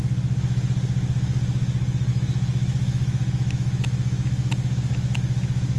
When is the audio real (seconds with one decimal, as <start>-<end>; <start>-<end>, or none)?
0.0-2.1